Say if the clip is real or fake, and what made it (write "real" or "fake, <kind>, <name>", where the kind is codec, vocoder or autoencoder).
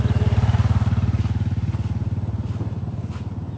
real